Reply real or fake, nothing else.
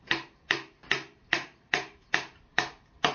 fake